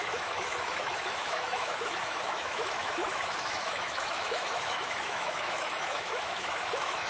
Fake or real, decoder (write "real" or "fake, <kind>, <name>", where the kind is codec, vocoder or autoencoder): fake, autoencoder, DAC-VAE